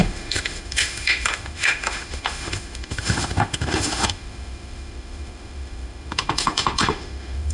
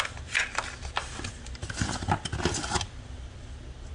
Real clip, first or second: second